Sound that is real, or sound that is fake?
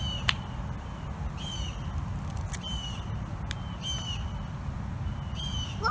real